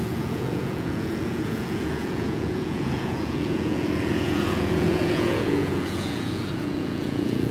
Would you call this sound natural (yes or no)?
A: no